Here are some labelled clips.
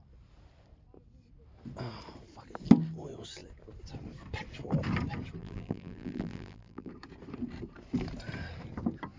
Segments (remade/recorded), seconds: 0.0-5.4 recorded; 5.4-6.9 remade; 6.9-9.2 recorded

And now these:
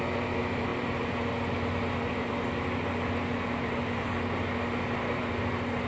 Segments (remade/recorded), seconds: 0.0-0.7 remade; 0.7-2.3 recorded; 2.3-3.3 remade; 3.3-3.8 recorded; 3.8-5.9 remade

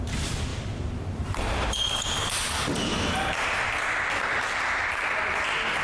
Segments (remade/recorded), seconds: 0.0-0.5 recorded; 0.5-1.8 remade; 1.8-2.9 recorded; 2.9-4.9 remade; 4.9-5.8 recorded

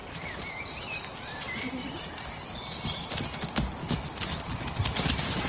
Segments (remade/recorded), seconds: 0.0-1.2 remade; 1.2-1.8 recorded; 1.8-2.4 remade; 2.4-3.8 recorded; 3.8-5.5 remade

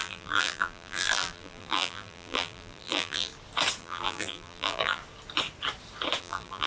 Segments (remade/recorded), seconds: 0.0-3.3 remade; 3.3-3.8 recorded; 3.8-5.0 remade; 5.0-6.2 recorded; 6.2-6.7 remade

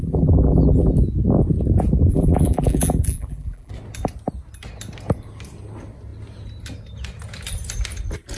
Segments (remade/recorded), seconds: 0.0-0.9 remade; 0.9-2.1 recorded; 2.1-3.7 remade; 3.7-8.4 recorded

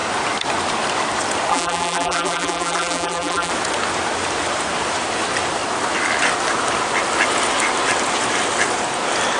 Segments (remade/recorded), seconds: 0.0-1.5 recorded; 1.5-3.5 remade; 3.5-9.4 recorded